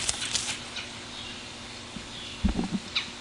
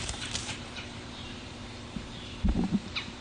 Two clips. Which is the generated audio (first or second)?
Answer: second